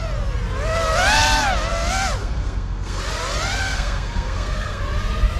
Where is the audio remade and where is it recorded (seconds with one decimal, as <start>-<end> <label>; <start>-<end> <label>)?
0.0-2.2 recorded; 2.2-3.0 remade; 3.0-3.6 recorded; 3.6-4.8 remade; 4.8-5.4 recorded